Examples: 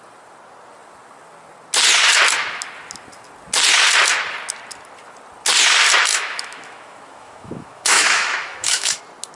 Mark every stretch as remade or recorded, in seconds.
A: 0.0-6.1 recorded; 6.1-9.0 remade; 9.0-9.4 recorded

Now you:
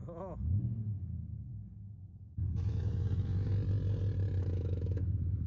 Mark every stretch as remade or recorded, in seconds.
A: 0.0-0.6 recorded; 0.6-1.5 remade; 1.5-2.5 recorded; 2.5-3.5 remade; 3.5-4.4 recorded; 4.4-5.5 remade